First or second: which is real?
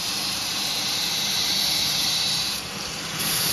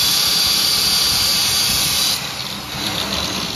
second